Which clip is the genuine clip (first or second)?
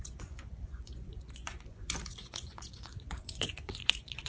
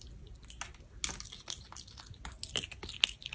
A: second